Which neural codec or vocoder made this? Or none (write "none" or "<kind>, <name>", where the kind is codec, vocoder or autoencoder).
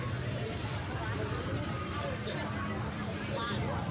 none